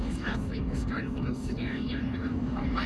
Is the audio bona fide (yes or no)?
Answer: no